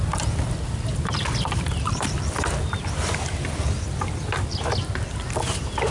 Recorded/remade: recorded